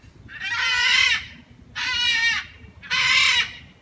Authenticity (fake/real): real